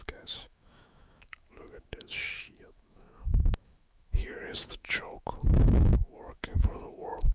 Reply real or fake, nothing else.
fake